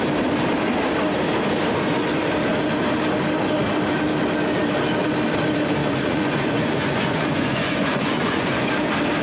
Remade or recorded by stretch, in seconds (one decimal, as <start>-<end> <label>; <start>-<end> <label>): 0.0-5.8 recorded; 5.8-8.7 remade; 8.7-9.2 recorded

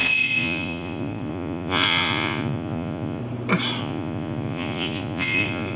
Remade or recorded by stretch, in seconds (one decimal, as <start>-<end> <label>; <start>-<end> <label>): 0.0-3.2 remade; 3.2-3.8 recorded; 3.8-5.8 remade

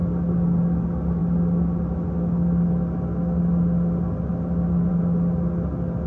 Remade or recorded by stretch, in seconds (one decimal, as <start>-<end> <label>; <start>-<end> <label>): 0.0-6.1 recorded

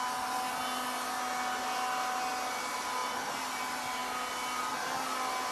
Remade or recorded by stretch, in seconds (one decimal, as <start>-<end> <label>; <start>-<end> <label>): 0.0-5.5 recorded

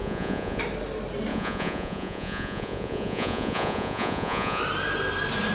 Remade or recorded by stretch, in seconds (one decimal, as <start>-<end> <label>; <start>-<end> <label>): 0.0-0.6 remade; 0.6-1.3 recorded; 1.3-4.6 remade; 4.6-5.5 recorded

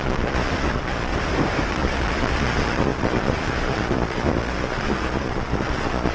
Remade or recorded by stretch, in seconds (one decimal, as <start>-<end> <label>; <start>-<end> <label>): 0.0-1.1 remade; 1.1-1.7 recorded; 1.7-6.1 remade

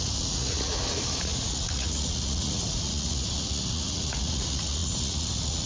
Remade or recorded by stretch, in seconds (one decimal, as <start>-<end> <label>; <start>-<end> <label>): 0.0-5.7 remade

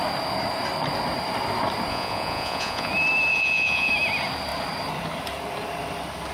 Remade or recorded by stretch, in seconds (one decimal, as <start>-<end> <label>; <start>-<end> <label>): 0.0-1.9 recorded; 1.9-2.9 remade; 2.9-3.3 recorded; 3.3-3.9 remade; 3.9-6.3 recorded